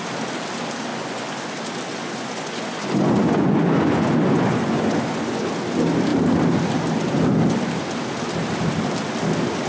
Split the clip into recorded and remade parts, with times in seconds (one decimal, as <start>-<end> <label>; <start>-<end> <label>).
0.0-0.9 recorded; 0.9-1.5 remade; 1.5-1.9 recorded; 1.9-5.4 remade; 5.4-9.7 recorded

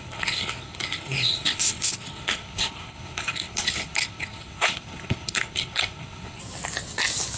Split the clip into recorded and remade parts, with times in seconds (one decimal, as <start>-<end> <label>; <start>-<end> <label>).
0.0-6.4 remade; 6.4-7.4 recorded

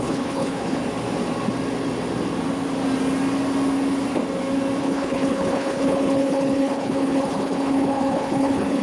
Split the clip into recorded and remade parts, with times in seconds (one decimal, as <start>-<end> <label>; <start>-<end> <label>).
0.0-0.8 remade; 0.8-4.8 recorded; 4.8-8.8 remade

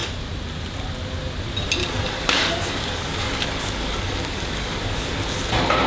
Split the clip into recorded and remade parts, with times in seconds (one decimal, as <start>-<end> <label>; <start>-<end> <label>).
0.0-1.8 recorded; 1.8-5.1 remade; 5.1-5.9 recorded